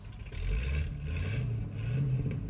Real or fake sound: real